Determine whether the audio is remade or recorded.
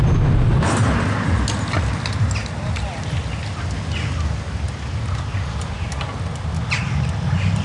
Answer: recorded